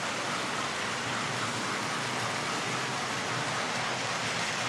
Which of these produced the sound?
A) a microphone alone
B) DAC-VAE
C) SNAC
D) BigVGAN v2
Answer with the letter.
A